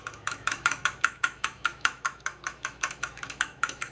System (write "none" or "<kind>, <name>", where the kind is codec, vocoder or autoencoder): autoencoder, DAC-VAE